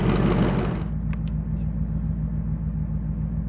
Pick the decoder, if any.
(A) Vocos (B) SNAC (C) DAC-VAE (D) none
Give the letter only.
D